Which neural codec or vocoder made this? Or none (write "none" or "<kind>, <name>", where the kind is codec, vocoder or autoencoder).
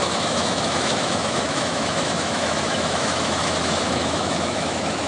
autoencoder, DAC-VAE